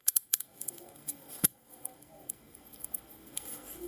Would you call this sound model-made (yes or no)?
yes